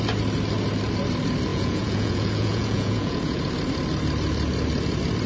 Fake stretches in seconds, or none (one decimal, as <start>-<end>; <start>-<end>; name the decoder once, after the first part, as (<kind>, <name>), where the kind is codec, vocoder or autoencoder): 1.5-3.4 (vocoder, Vocos)